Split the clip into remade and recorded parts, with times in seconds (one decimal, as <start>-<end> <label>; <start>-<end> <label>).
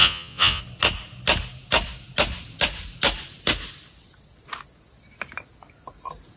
0.0-0.6 remade; 0.6-6.4 recorded